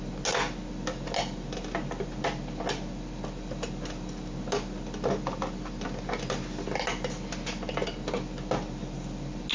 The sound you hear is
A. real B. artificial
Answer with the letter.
A